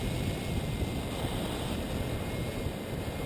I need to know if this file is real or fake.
real